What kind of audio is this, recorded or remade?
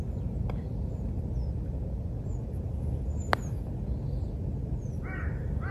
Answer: recorded